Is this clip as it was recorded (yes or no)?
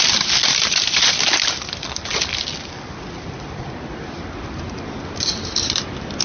yes